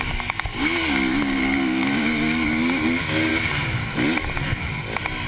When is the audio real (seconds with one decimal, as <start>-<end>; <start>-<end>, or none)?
3.3-5.3